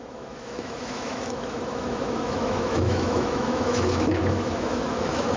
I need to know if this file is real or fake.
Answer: fake